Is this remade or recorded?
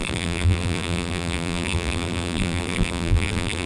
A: remade